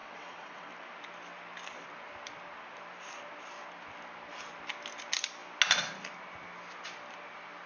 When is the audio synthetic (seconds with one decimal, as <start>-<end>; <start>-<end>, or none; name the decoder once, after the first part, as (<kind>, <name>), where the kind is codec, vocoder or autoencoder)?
0.0-0.7 (vocoder, WaveNeXt)